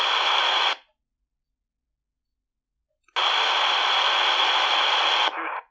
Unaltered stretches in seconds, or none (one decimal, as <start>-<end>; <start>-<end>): 0.0-5.7